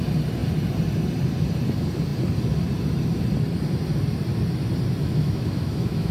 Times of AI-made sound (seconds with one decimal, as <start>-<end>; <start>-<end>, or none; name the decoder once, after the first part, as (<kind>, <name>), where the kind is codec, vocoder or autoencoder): 5.0-6.1 (autoencoder, DAC-VAE)